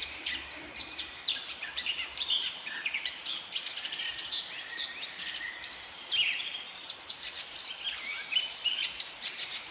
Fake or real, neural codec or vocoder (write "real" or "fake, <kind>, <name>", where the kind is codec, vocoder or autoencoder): fake, vocoder, BigVGAN v2